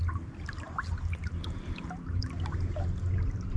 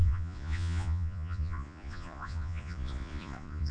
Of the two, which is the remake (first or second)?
second